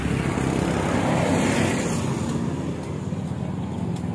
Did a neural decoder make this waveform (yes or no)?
no